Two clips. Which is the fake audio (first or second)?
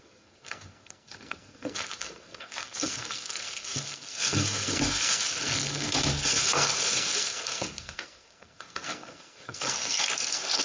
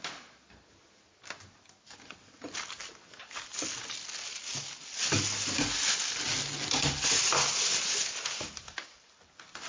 first